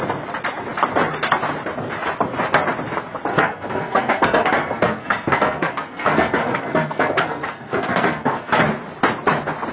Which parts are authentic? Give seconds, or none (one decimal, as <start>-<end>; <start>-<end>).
0.0-3.3; 8.6-9.7